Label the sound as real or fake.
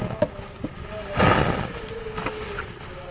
real